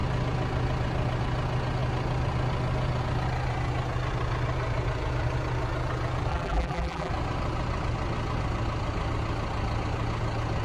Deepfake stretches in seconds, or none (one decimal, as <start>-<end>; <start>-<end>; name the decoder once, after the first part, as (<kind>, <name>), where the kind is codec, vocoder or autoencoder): 6.3-7.1 (vocoder, BigVGAN v2)